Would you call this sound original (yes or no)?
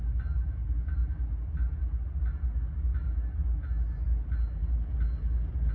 yes